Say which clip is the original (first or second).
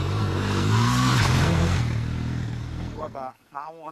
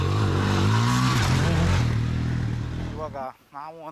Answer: second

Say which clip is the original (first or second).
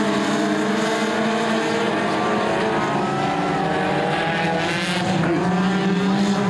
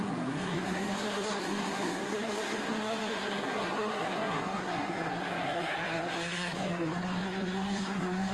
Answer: first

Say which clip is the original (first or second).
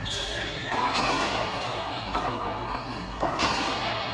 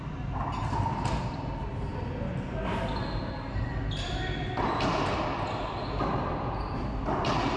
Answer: second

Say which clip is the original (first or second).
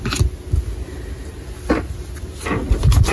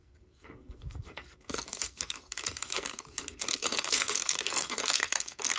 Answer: first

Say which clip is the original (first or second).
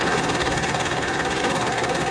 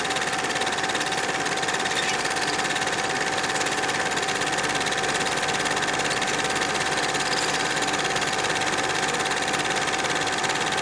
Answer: second